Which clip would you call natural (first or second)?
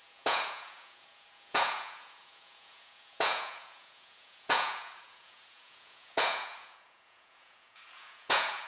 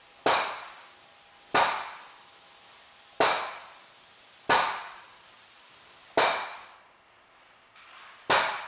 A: second